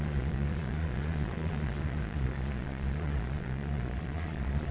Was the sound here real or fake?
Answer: fake